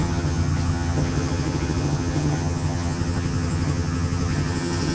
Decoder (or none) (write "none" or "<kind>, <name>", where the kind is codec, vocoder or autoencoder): vocoder, HiFi-GAN